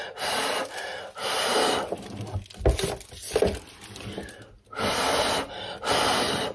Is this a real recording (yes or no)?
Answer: yes